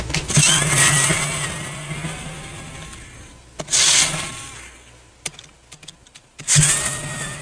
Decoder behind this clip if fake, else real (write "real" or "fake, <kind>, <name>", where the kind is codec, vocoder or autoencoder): real